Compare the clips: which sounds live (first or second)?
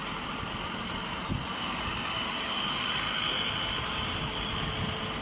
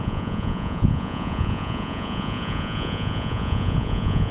first